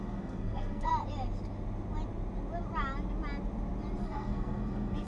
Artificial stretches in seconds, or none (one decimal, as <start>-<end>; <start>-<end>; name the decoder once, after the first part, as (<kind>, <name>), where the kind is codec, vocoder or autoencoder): 0.0-0.9 (codec, SNAC); 4.0-5.1